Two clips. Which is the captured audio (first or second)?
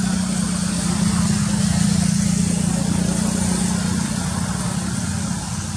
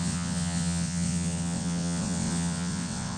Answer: first